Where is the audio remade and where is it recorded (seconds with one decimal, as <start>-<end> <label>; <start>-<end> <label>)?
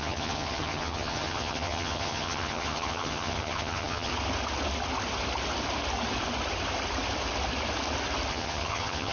0.0-4.1 remade; 4.1-8.3 recorded; 8.3-9.1 remade